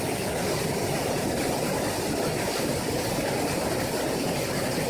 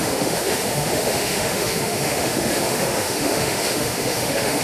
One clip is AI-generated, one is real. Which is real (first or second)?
first